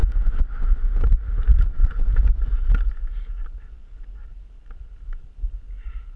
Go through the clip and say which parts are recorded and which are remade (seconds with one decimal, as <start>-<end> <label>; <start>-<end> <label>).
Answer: 0.0-3.7 remade; 3.7-4.2 recorded; 4.2-6.2 remade